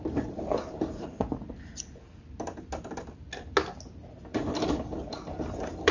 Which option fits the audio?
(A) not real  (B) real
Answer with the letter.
B